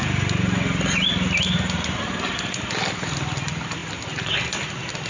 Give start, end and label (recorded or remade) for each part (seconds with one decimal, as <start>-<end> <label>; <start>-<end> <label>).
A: 0.0-5.1 recorded